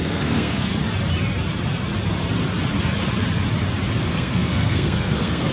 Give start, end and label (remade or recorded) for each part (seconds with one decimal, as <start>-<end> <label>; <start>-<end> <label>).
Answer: 0.0-0.7 remade; 0.7-4.0 recorded; 4.0-5.5 remade